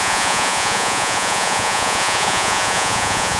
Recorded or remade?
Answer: remade